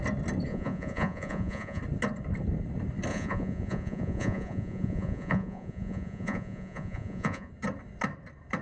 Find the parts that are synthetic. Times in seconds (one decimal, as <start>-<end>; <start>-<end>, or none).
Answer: 0.5-1.8; 3.1-7.5